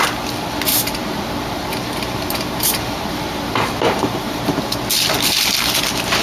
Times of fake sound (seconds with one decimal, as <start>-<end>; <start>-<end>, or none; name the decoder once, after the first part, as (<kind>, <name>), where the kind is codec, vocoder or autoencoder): 0.7-4.4 (vocoder, BigVGAN v2)